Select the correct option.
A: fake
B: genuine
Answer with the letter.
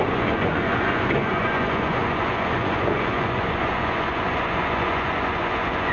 A